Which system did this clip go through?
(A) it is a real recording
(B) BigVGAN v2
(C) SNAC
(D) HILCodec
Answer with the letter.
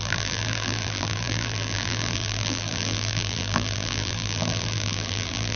B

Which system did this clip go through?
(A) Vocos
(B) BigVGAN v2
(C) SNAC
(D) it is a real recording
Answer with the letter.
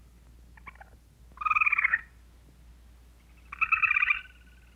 D